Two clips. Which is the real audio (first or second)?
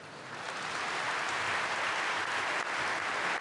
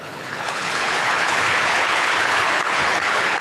first